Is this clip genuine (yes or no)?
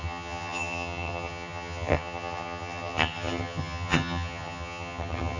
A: no